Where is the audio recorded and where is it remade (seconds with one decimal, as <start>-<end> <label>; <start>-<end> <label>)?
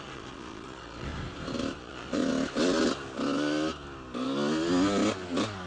0.0-1.1 remade; 1.1-1.8 recorded; 1.8-2.2 remade; 2.2-5.7 recorded